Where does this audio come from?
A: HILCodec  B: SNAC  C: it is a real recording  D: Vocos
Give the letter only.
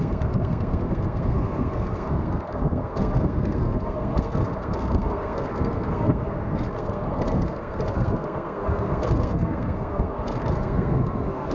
B